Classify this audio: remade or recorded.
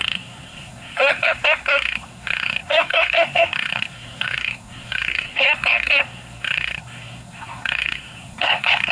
remade